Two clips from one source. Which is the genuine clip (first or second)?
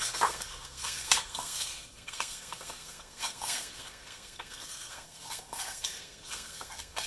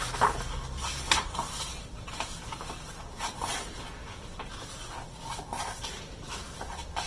second